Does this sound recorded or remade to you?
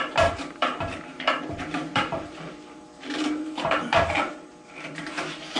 remade